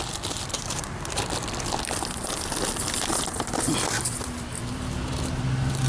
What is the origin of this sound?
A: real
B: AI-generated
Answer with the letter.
B